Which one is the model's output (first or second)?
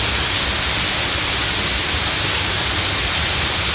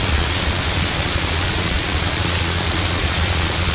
second